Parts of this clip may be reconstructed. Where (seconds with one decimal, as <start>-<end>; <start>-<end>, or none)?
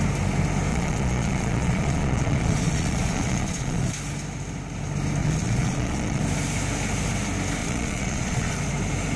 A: 0.7-3.9; 5.2-6.2; 7.6-8.5